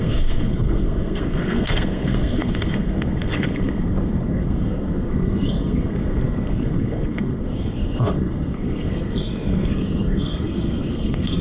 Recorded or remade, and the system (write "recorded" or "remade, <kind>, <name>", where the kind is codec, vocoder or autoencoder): remade, codec, SNAC